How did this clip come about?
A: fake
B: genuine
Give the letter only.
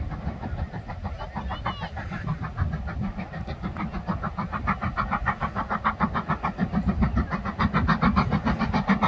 B